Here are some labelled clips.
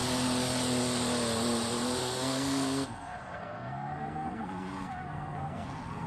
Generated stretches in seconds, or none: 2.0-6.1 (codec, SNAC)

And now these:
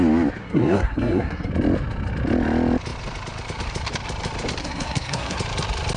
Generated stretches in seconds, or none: 0.4-1.5 (codec, SNAC); 4.6-5.4

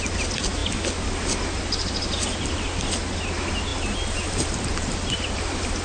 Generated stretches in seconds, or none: none

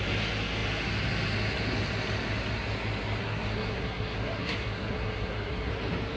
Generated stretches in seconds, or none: 3.2-5.7 (codec, SNAC)

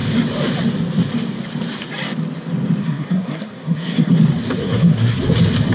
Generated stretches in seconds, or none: 2.8-4.1 (codec, SNAC); 4.6-5.2